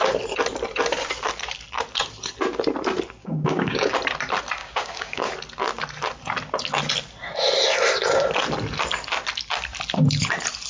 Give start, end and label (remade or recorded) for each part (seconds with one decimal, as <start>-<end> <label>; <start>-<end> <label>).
0.0-3.2 recorded; 3.2-3.9 remade; 3.9-4.6 recorded; 4.6-5.3 remade; 5.3-10.7 recorded